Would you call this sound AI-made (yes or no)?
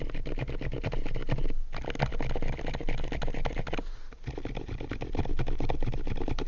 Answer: no